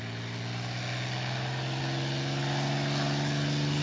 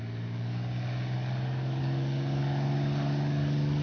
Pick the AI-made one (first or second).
second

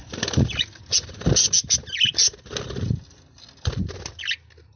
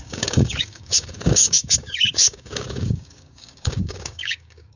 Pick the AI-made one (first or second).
second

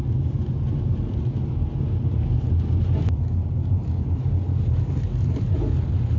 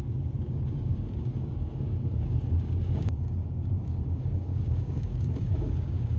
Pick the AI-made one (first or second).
second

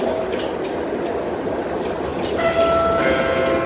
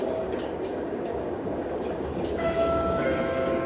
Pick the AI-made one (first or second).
second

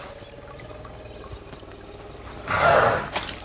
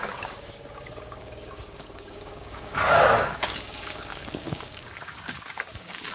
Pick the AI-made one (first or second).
second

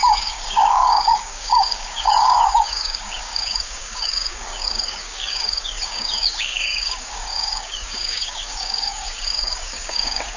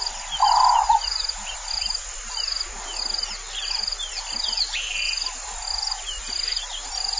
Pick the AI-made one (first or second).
first